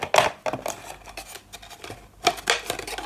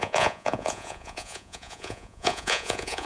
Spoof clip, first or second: second